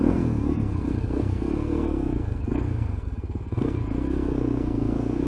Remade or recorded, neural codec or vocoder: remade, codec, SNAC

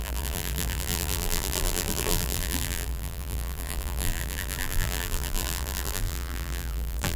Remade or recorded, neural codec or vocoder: remade, vocoder, BigVGAN v2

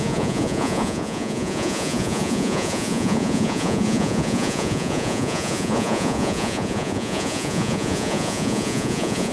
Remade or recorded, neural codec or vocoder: remade, vocoder, Vocos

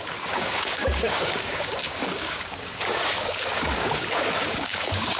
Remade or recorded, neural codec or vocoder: remade, codec, DAC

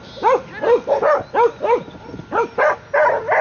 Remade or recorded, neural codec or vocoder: recorded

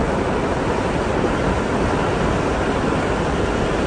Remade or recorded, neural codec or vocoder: recorded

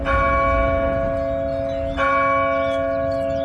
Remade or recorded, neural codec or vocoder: recorded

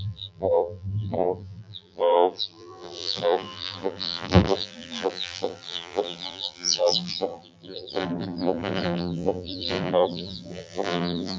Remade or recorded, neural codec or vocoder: remade, vocoder, BigVGAN v2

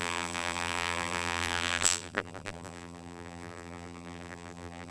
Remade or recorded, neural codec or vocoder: remade, vocoder, BigVGAN v2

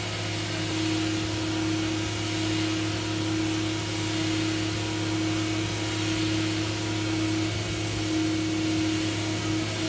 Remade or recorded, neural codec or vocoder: recorded